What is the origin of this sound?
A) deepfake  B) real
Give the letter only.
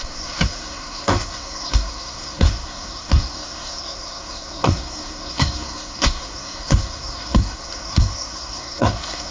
A